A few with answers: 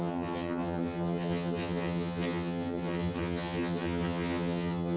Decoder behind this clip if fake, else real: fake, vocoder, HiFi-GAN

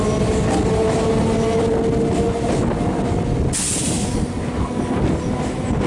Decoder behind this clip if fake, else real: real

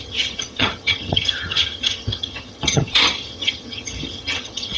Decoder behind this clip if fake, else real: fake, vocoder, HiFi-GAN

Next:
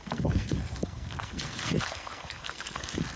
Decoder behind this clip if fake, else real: fake, codec, SNAC